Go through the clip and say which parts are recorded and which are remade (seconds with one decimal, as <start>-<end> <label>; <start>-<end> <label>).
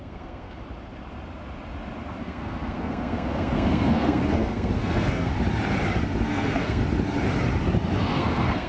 0.0-0.6 remade; 0.6-2.2 recorded; 2.2-5.3 remade; 5.3-6.2 recorded; 6.2-6.8 remade; 6.8-8.0 recorded; 8.0-8.7 remade